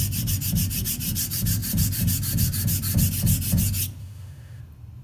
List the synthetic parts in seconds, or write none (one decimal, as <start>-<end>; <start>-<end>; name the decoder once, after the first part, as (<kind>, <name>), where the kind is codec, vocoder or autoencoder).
4.0-4.6 (autoencoder, DAC-VAE)